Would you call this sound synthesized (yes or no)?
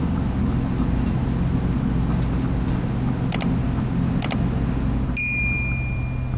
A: no